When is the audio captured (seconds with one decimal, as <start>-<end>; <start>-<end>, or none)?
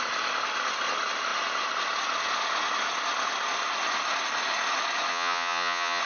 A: 0.0-5.1